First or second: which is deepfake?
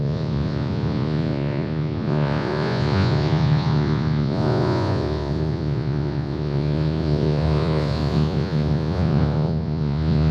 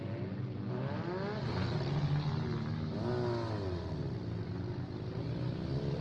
first